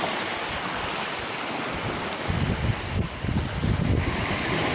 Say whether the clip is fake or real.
real